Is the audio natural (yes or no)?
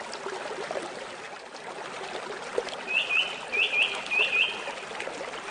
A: yes